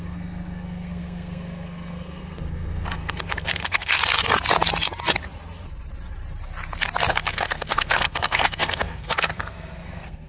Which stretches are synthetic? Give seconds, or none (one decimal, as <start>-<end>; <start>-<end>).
0.0-4.0; 7.1-10.3